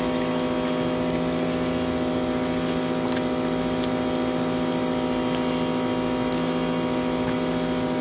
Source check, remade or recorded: recorded